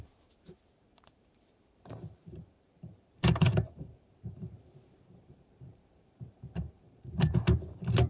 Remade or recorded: remade